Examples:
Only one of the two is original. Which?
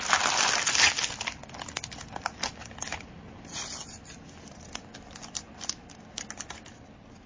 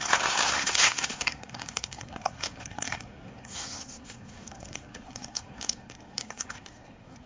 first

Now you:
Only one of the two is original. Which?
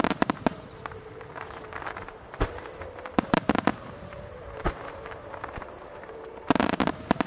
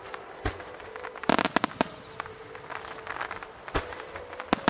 second